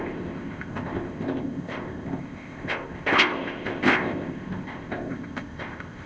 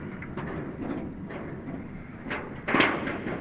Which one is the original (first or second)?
second